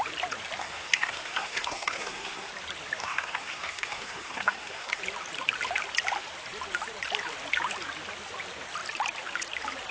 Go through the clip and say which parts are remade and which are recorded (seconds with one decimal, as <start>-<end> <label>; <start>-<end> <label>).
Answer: 0.0-0.6 recorded; 0.6-2.5 remade; 2.5-3.0 recorded; 3.0-5.0 remade; 5.0-9.9 recorded